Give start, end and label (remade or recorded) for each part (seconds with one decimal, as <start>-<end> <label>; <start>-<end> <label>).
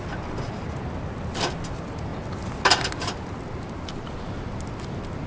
0.0-5.3 recorded